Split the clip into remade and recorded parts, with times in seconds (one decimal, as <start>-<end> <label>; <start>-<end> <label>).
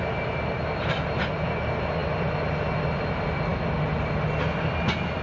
0.0-5.2 recorded